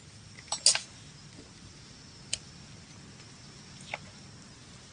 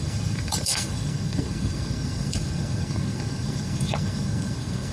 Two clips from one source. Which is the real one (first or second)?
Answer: first